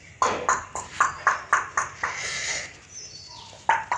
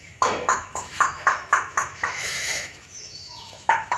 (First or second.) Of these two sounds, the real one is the first